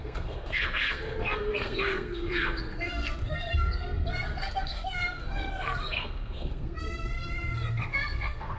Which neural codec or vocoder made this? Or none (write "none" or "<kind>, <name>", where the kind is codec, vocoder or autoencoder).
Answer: codec, SNAC